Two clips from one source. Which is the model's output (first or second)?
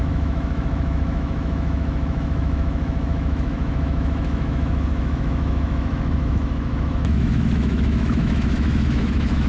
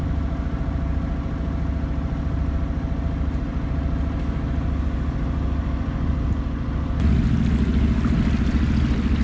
first